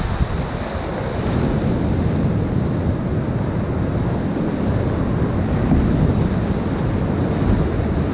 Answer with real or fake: real